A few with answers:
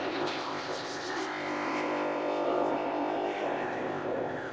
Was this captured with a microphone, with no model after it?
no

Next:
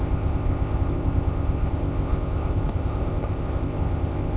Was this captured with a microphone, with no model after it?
no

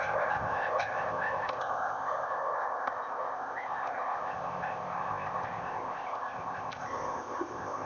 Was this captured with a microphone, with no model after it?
no